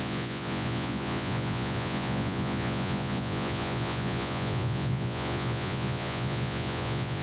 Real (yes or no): no